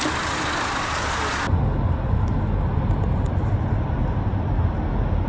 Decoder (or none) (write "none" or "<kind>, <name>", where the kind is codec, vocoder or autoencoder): none